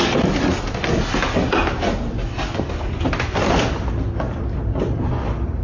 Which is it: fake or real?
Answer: real